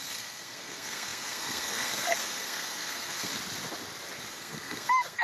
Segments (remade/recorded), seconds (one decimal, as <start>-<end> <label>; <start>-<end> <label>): 0.0-3.3 remade; 3.3-4.3 recorded; 4.3-5.2 remade